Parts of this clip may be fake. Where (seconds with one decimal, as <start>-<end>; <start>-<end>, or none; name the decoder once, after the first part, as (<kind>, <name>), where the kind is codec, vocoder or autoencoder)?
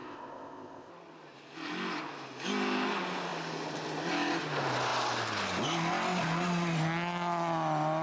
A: 0.0-0.9 (codec, ZipCodec)